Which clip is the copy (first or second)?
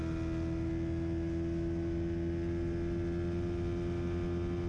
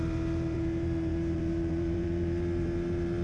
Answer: second